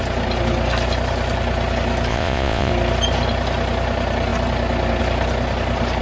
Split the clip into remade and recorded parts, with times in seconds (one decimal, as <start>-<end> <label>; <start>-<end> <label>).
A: 0.0-2.1 recorded; 2.1-2.7 remade; 2.7-6.0 recorded